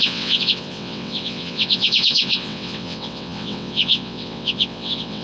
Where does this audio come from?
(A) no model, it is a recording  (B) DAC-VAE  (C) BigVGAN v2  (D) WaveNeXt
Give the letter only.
D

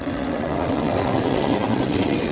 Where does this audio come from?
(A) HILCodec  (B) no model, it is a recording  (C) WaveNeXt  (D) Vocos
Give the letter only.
C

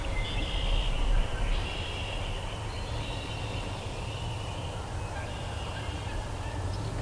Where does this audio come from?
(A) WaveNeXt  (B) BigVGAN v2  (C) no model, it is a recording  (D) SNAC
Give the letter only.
C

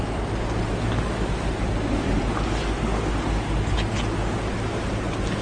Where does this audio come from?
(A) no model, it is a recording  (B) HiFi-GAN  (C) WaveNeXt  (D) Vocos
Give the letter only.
A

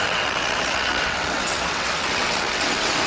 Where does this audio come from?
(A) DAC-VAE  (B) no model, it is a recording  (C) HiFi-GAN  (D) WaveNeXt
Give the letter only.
D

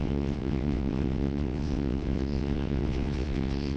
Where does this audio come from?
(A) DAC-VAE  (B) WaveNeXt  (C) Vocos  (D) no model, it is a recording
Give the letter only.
B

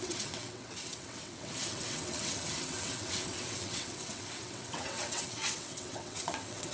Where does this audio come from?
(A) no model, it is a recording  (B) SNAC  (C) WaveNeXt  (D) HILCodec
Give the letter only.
C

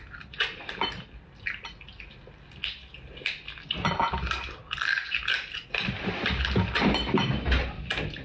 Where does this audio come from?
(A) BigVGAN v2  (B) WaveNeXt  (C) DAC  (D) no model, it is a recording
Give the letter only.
D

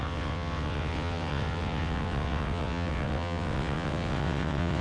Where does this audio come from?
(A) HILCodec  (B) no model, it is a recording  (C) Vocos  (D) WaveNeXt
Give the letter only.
D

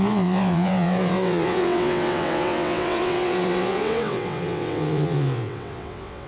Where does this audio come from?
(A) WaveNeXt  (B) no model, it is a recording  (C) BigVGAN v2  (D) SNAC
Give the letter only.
A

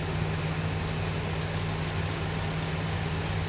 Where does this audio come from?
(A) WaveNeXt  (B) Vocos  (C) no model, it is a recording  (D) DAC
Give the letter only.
C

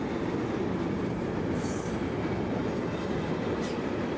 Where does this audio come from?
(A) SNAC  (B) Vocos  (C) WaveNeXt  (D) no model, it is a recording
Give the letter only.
D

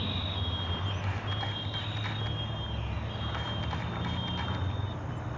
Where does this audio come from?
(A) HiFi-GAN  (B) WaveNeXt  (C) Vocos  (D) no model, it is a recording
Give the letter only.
D